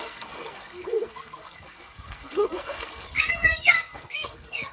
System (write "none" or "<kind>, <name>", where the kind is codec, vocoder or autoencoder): codec, SNAC